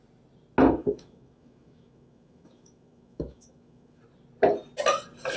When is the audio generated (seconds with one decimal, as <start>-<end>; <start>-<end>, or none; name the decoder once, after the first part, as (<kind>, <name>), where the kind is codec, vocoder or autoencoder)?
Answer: 0.8-4.0 (autoencoder, DAC-VAE)